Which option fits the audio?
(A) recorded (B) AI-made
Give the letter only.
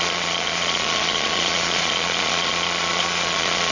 B